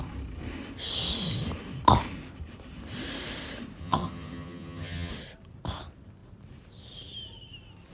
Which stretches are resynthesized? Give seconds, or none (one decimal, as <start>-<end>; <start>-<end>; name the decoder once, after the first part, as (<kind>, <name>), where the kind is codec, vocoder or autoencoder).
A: 3.8-5.1 (vocoder, HiFi-GAN)